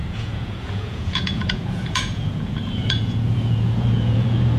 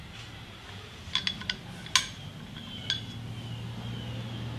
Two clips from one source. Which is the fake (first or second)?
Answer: first